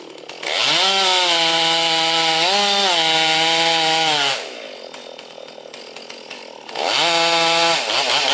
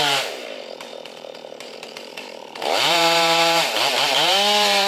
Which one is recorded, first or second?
first